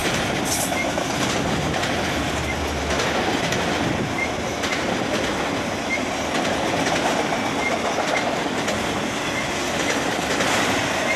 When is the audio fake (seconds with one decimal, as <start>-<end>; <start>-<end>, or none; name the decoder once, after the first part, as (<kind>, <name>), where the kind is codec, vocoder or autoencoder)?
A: none